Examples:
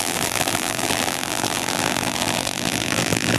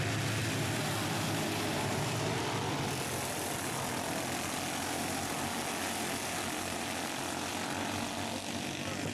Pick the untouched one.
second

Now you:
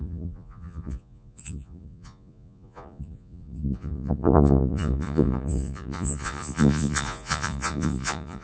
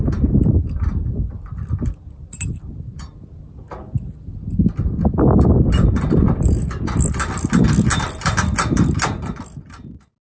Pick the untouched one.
second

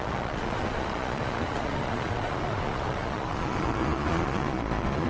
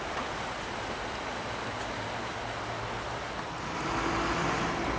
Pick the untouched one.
second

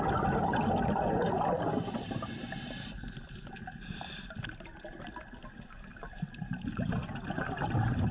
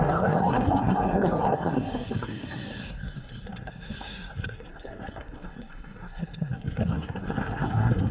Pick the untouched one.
first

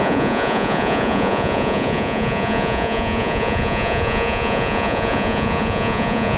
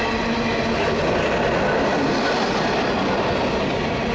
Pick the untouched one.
second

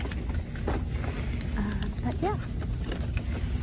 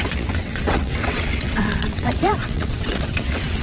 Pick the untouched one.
first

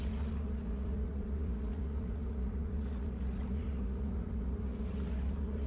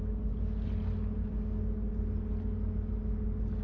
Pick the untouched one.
second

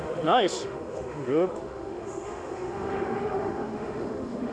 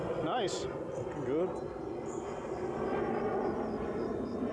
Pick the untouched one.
second